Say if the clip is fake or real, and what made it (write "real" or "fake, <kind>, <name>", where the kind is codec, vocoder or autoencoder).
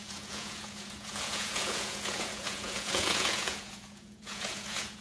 fake, vocoder, Vocos